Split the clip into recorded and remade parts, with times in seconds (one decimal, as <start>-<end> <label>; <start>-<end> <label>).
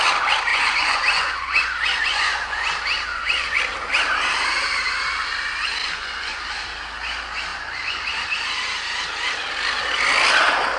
0.0-0.5 recorded; 0.5-2.7 remade; 2.7-3.1 recorded; 3.1-3.6 remade; 3.6-5.8 recorded; 5.8-6.4 remade; 6.4-7.5 recorded; 7.5-8.0 remade; 8.0-10.8 recorded